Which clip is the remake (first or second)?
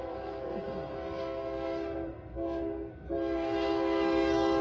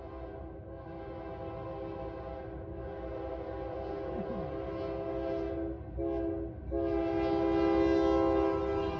first